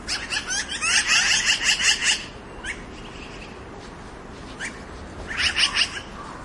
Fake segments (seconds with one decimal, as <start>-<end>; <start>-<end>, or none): none